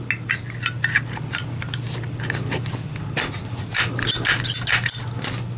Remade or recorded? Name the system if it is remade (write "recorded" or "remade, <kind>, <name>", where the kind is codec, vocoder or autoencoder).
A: recorded